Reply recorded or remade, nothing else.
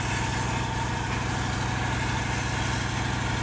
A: recorded